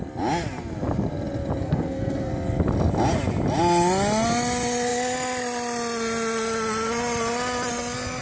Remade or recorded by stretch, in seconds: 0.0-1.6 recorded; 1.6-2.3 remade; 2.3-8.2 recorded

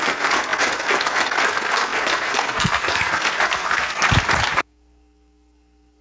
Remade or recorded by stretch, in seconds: 0.0-4.0 remade; 4.0-4.6 recorded; 4.6-6.0 remade

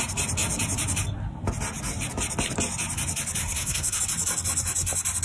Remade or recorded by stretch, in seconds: 0.0-3.4 recorded; 3.4-4.0 remade; 4.0-5.2 recorded

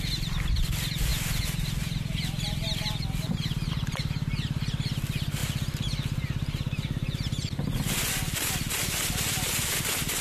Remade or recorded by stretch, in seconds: 0.0-10.2 recorded

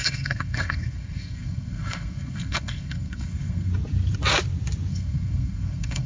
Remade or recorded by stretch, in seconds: 0.0-3.7 remade; 3.7-4.9 recorded; 4.9-6.1 remade

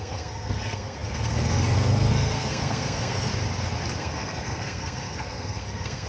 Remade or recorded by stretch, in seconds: 0.0-3.3 remade; 3.3-4.0 recorded; 4.0-6.1 remade

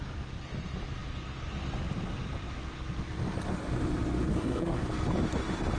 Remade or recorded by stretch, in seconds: 0.0-4.3 recorded; 4.3-4.8 remade; 4.8-5.8 recorded

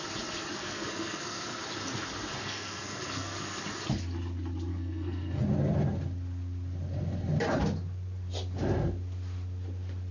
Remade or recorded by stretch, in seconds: 0.0-0.6 recorded; 0.6-1.6 remade; 1.6-2.4 recorded; 2.4-3.6 remade; 3.6-4.7 recorded; 4.7-5.4 remade; 5.4-10.1 recorded